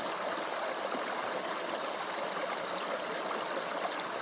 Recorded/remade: recorded